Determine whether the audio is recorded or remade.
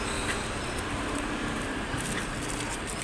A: remade